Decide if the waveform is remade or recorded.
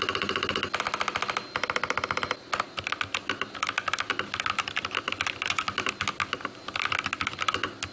recorded